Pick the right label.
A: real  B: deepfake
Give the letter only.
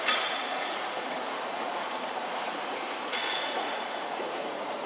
B